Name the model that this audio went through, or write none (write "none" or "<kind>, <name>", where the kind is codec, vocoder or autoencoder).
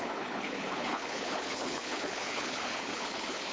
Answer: codec, HILCodec